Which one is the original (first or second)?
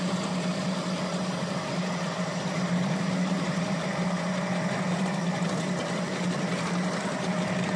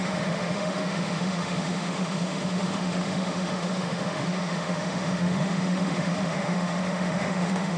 first